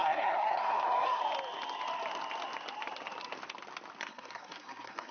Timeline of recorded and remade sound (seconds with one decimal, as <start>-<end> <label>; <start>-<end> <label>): 0.0-1.2 remade; 1.2-4.0 recorded; 4.0-5.1 remade